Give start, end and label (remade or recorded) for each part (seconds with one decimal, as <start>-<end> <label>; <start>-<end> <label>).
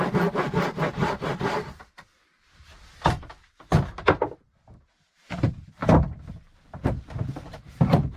0.0-3.3 remade; 3.3-5.1 recorded; 5.1-5.8 remade; 5.8-6.3 recorded; 6.3-8.2 remade